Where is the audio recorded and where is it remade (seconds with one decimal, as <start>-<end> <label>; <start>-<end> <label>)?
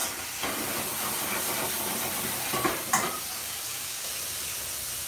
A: 0.0-3.4 recorded; 3.4-4.1 remade; 4.1-5.1 recorded